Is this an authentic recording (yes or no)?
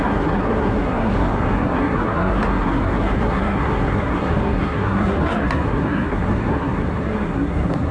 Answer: no